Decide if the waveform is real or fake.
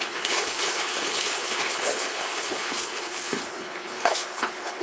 fake